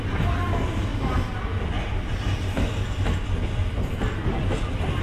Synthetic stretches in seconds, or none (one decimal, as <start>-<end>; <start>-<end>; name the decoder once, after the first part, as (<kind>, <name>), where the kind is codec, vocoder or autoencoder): none